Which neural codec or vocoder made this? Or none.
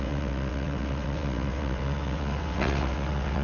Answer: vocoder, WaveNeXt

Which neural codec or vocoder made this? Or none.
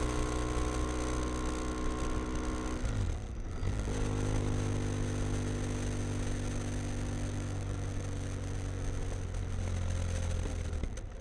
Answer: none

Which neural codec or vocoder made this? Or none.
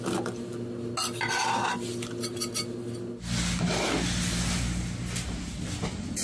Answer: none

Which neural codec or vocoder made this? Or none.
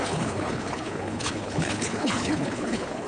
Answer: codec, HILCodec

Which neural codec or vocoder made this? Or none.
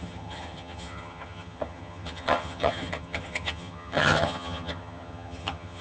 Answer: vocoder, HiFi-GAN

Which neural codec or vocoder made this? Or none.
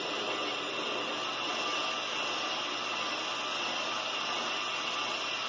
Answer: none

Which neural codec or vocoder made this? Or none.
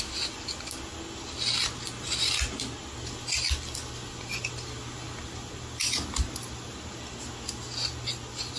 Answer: none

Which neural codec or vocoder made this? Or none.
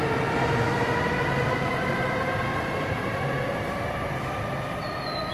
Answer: none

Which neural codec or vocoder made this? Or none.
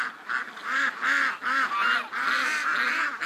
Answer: none